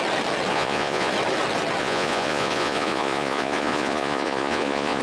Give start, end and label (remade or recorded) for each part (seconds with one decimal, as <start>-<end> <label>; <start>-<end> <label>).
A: 0.0-0.5 recorded; 0.5-1.1 remade; 1.1-1.8 recorded; 1.8-5.0 remade

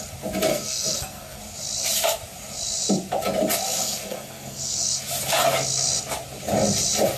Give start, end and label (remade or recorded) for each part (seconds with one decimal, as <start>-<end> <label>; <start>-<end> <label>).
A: 0.0-0.5 recorded; 0.5-1.4 remade; 1.4-3.8 recorded; 3.8-5.0 remade; 5.0-7.2 recorded

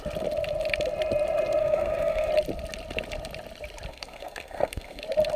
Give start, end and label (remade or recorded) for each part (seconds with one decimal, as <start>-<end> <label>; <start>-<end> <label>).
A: 0.0-1.6 recorded; 1.6-2.3 remade; 2.3-3.9 recorded; 3.9-5.0 remade; 5.0-5.4 recorded

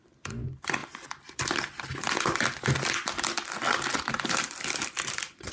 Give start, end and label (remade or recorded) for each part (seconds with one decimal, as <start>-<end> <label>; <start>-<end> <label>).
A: 0.0-5.5 recorded

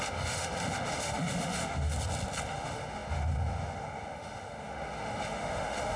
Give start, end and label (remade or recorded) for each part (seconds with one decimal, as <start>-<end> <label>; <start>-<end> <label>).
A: 0.0-1.9 remade; 1.9-2.5 recorded; 2.5-6.0 remade

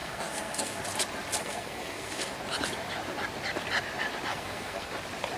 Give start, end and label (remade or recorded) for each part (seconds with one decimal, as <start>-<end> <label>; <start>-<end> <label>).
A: 0.0-0.8 remade; 0.8-1.4 recorded; 1.4-2.3 remade; 2.3-4.3 recorded; 4.3-4.9 remade; 4.9-5.4 recorded

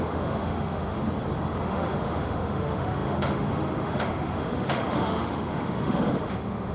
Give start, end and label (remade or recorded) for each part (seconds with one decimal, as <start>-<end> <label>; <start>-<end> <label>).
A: 0.0-1.0 remade; 1.0-1.6 recorded; 1.6-6.7 remade

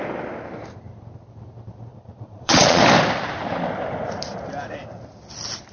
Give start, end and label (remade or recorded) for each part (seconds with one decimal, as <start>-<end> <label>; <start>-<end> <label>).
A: 0.0-1.9 recorded; 1.9-2.8 remade; 2.8-5.7 recorded